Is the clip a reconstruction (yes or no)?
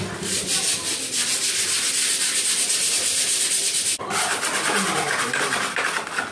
no